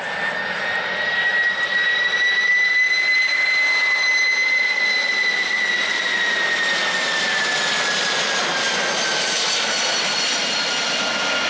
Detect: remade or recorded recorded